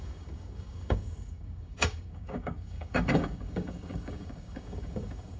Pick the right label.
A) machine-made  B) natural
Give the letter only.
A